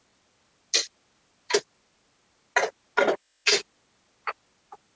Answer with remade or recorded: recorded